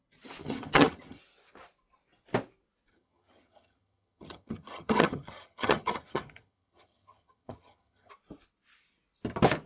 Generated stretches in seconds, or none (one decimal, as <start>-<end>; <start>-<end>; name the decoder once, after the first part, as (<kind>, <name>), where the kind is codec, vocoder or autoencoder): 0.4-1.2 (vocoder, HiFi-GAN); 2.9-8.1